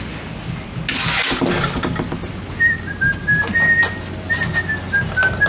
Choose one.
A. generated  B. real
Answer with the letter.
B